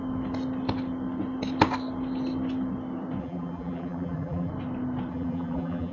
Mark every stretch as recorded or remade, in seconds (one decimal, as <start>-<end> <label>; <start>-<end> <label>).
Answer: 0.0-3.2 recorded; 3.2-4.5 remade; 4.5-5.1 recorded; 5.1-5.9 remade